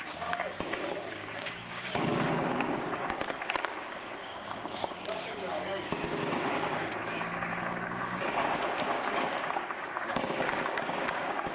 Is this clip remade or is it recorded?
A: remade